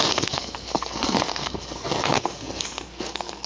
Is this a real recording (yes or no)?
no